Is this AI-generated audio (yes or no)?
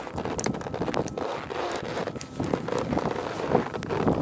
no